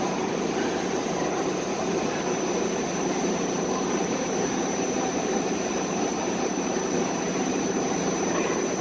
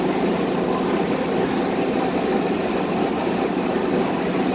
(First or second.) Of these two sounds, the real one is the second